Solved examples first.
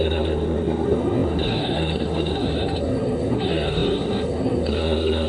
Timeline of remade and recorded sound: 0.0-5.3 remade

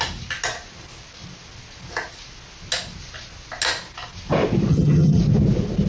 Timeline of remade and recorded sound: 0.0-4.7 recorded; 4.7-5.2 remade; 5.2-5.9 recorded

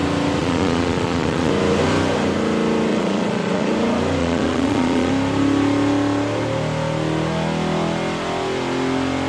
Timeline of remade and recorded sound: 0.0-0.4 recorded; 0.4-1.5 remade; 1.5-2.9 recorded; 2.9-3.7 remade; 3.7-4.2 recorded; 4.2-5.1 remade; 5.1-9.3 recorded

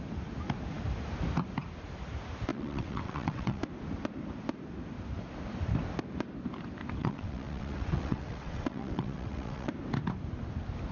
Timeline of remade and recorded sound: 0.0-2.5 recorded; 2.5-3.6 remade; 3.6-7.0 recorded; 7.0-9.7 remade; 9.7-10.9 recorded

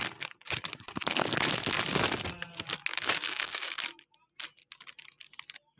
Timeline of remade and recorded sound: 0.0-2.9 recorded; 2.9-3.8 remade; 3.8-5.8 recorded

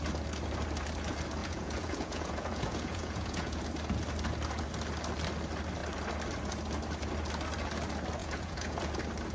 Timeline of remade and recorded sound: 0.0-1.4 recorded; 1.4-3.6 remade; 3.6-8.2 recorded; 8.2-8.9 remade; 8.9-9.3 recorded

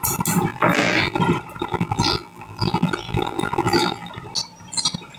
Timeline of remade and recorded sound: 0.0-0.5 recorded; 0.5-1.2 remade; 1.2-1.7 recorded; 1.7-4.1 remade; 4.1-5.2 recorded